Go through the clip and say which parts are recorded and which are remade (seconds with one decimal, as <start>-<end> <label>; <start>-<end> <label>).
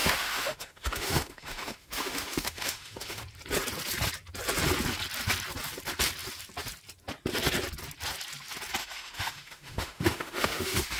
0.0-3.2 remade; 3.2-8.8 recorded; 8.8-11.0 remade